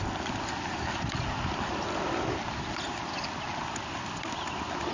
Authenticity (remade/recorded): recorded